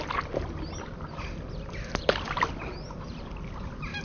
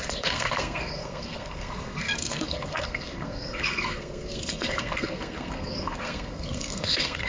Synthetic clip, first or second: second